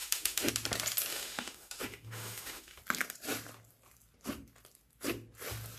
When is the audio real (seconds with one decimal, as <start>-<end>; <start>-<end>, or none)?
0.5-1.1; 2.8-5.8